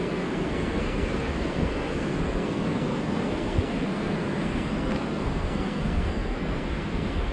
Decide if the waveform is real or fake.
fake